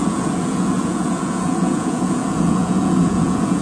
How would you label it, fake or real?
fake